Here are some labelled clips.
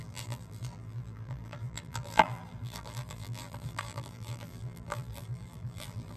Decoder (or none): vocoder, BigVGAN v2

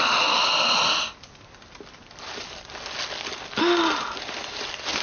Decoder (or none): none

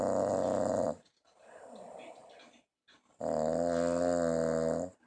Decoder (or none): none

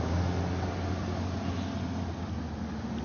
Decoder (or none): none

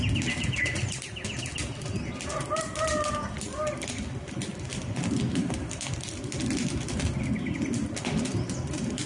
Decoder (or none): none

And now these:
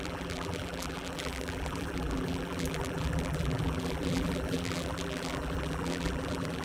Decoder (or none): vocoder, BigVGAN v2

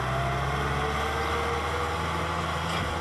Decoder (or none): none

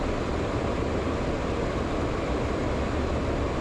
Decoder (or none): none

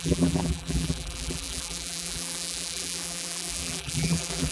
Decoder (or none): vocoder, BigVGAN v2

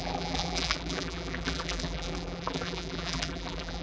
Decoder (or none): vocoder, BigVGAN v2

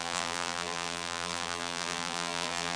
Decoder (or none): vocoder, BigVGAN v2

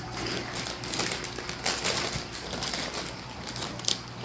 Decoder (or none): none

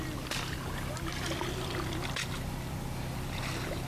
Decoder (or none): none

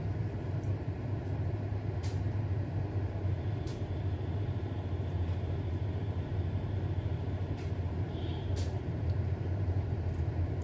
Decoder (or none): vocoder, BigVGAN v2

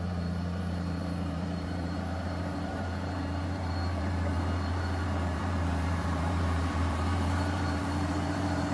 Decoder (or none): vocoder, BigVGAN v2